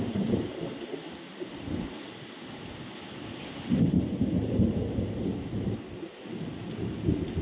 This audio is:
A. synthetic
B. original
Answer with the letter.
B